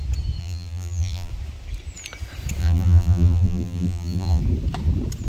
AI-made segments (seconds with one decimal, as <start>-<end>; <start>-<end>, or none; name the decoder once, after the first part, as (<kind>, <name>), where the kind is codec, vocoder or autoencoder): 0.4-1.3 (vocoder, BigVGAN v2); 2.6-4.4

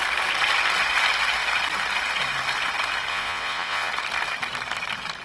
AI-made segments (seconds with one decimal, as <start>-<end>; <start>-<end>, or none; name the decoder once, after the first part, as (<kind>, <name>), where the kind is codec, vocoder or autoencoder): 3.1-3.9 (vocoder, Vocos)

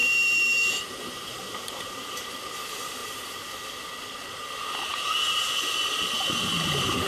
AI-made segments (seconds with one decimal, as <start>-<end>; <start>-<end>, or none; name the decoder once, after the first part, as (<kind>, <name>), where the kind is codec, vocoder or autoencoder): 0.0-2.3 (vocoder, BigVGAN v2); 3.0-3.5; 4.9-5.7

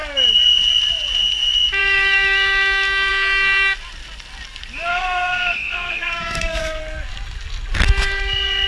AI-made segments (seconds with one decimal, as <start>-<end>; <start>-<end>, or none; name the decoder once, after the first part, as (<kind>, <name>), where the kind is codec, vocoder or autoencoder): 4.9-6.8 (codec, SNAC)

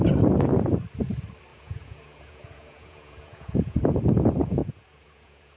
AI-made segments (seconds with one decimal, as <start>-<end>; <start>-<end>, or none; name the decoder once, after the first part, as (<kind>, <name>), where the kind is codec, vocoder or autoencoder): 1.5-3.8 (vocoder, Vocos); 4.6-5.6